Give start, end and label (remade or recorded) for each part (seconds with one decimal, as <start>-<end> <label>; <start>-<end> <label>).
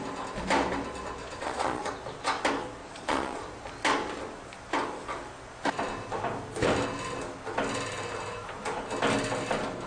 0.0-1.2 recorded; 1.2-1.9 remade; 1.9-2.8 recorded; 2.8-3.4 remade; 3.4-9.9 recorded